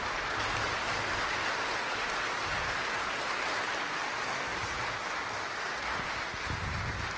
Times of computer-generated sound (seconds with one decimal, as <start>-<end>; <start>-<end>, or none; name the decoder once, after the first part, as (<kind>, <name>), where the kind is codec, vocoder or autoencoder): 4.5-5.0 (vocoder, Vocos)